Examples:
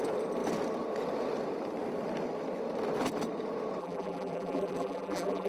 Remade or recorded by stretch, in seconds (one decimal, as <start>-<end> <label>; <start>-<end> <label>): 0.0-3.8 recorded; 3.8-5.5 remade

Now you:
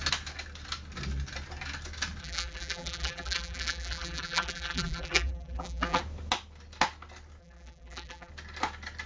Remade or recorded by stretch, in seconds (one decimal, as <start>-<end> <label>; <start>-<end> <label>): 0.0-2.2 recorded; 2.2-6.0 remade; 6.0-7.4 recorded; 7.4-8.3 remade; 8.3-9.1 recorded

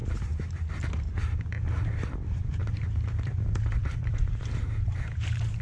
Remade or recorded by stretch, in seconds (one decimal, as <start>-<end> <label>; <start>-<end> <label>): 0.0-1.2 remade; 1.2-2.1 recorded; 2.1-5.6 remade

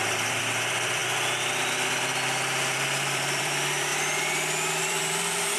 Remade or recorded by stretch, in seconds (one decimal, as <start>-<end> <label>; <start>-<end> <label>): 0.0-1.0 remade; 1.0-2.0 recorded; 2.0-3.9 remade; 3.9-4.8 recorded; 4.8-5.6 remade